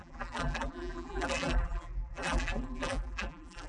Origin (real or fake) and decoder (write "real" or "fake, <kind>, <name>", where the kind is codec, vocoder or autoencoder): fake, vocoder, BigVGAN v2